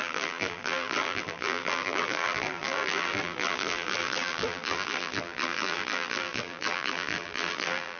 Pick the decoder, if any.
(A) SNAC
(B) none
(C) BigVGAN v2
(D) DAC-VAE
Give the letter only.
C